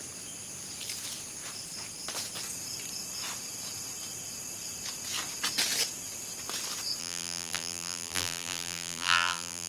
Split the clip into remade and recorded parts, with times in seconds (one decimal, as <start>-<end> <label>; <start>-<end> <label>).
0.0-7.0 recorded; 7.0-9.7 remade